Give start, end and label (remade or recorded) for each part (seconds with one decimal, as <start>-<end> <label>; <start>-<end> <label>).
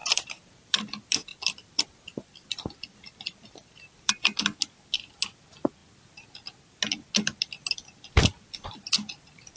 0.0-0.8 remade; 0.8-1.3 recorded; 1.3-4.1 remade; 4.1-9.6 recorded